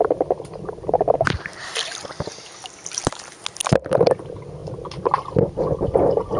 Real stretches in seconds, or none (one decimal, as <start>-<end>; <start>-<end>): 0.0-1.5; 2.2-4.6